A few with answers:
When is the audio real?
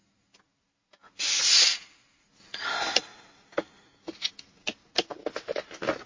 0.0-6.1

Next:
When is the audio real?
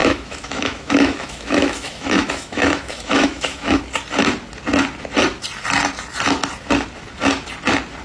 3.8-8.0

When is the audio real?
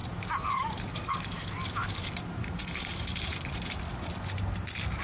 0.9-1.8; 3.8-5.0